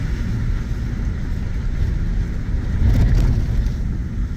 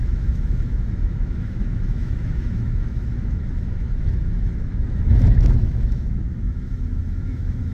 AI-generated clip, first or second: second